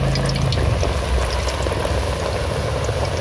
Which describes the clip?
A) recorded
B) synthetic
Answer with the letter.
A